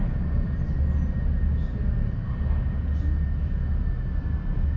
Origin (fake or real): real